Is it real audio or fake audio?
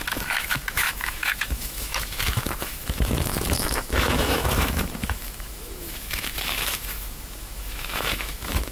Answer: fake